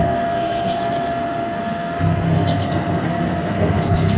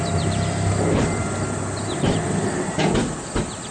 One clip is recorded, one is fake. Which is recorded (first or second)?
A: second